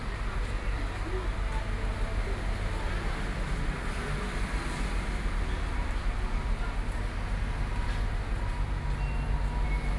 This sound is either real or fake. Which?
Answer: real